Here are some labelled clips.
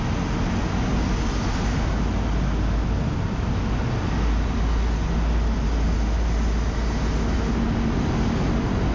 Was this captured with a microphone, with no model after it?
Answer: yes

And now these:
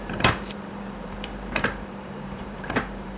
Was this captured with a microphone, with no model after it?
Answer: no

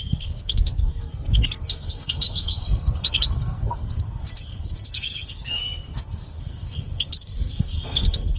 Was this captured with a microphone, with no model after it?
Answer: no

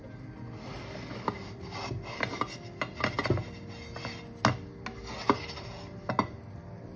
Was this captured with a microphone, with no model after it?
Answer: yes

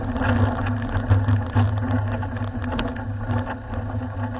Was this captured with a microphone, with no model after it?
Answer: yes